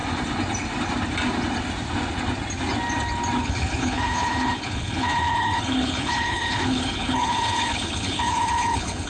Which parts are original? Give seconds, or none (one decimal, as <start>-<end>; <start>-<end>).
0.0-3.4